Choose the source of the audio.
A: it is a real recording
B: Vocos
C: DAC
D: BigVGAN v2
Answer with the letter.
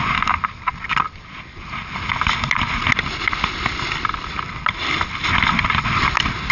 A